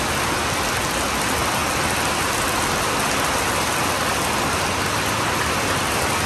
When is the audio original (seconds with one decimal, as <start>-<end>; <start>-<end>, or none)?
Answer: 0.0-6.3

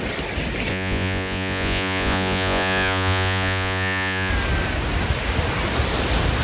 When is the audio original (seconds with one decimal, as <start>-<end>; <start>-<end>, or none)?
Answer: 0.0-0.7; 4.3-6.4

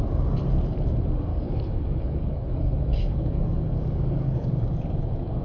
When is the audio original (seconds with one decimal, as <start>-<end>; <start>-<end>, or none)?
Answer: 0.0-1.3; 4.5-5.4

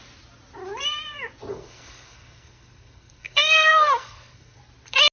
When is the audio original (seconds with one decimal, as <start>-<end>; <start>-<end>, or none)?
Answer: 0.0-1.5; 4.6-5.1

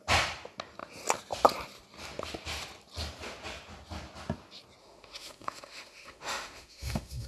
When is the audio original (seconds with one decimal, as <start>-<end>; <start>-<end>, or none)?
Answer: 0.0-4.8

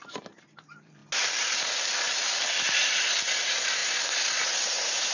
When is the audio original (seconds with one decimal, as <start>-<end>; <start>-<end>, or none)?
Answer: 1.0-2.6; 3.8-4.5

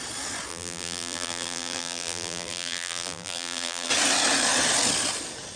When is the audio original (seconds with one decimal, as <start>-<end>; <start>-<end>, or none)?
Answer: 0.0-0.5; 3.9-5.6

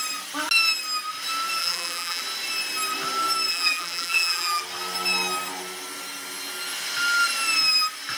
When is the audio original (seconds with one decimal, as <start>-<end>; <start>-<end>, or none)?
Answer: 0.0-1.6; 2.2-3.5; 4.6-8.2